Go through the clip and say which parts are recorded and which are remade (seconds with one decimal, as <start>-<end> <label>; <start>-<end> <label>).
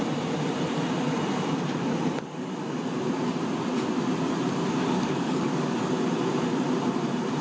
0.0-4.8 recorded; 4.8-5.9 remade; 5.9-7.4 recorded